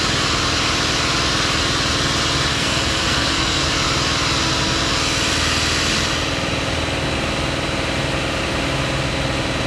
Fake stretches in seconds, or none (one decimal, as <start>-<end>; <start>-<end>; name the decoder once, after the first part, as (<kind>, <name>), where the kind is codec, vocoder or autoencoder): 2.5-3.7 (codec, SNAC)